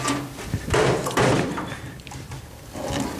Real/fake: fake